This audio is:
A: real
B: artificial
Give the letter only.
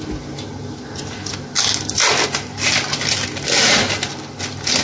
A